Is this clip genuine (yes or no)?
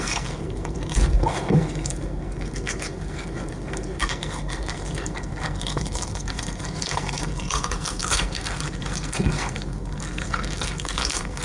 no